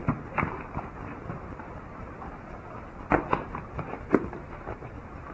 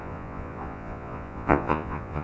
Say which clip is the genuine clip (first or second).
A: first